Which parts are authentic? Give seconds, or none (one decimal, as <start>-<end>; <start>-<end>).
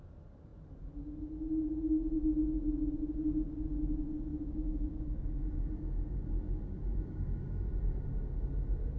0.0-4.3; 5.5-6.8; 7.7-9.0